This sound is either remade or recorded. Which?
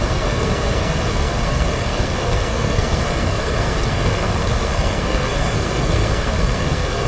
remade